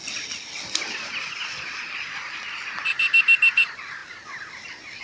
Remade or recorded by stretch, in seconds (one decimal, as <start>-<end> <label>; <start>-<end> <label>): 0.0-5.0 recorded